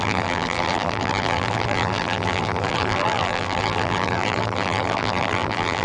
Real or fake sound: fake